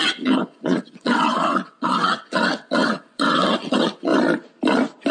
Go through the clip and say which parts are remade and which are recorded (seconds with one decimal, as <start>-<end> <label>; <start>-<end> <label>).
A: 0.0-4.1 remade; 4.1-5.1 recorded